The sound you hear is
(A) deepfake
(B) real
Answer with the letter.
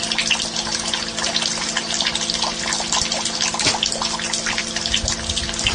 B